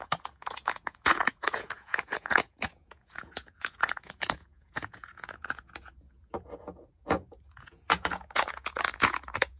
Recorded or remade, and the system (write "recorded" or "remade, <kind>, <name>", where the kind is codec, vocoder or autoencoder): remade, vocoder, Vocos